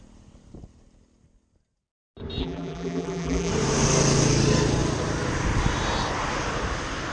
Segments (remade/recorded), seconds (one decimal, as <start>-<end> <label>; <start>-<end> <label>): 0.0-2.4 recorded; 2.4-3.5 remade; 3.5-7.1 recorded

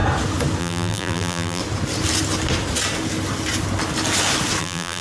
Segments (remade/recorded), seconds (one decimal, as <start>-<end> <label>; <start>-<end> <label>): 0.0-0.6 recorded; 0.6-1.6 remade; 1.6-4.6 recorded; 4.6-5.0 remade